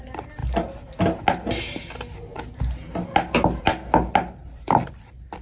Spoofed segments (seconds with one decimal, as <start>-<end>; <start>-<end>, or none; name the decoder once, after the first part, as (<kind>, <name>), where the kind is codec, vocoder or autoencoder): 4.4-4.9 (vocoder, BigVGAN v2)